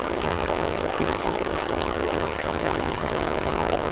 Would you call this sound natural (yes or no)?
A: no